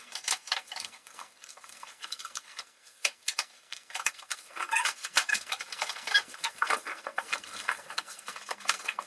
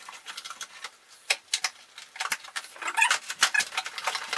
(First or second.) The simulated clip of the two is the first